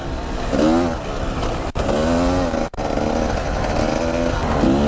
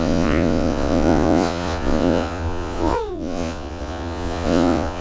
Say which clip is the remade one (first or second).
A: second